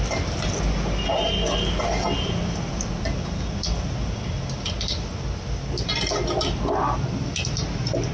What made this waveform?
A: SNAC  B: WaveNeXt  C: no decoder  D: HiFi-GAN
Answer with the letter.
C